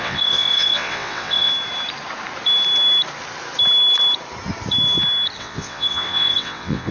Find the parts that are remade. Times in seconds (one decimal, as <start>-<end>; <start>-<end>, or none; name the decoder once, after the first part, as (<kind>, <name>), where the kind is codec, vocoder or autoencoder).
0.0-1.5 (vocoder, WaveNeXt); 5.4-6.9